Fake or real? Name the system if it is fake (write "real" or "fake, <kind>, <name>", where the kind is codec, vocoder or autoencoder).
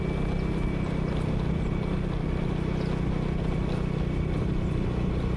real